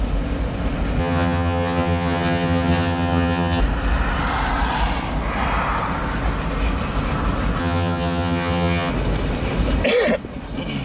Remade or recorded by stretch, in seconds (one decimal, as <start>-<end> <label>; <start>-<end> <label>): 0.0-1.0 recorded; 1.0-3.6 remade; 3.6-7.6 recorded; 7.6-8.9 remade; 8.9-10.8 recorded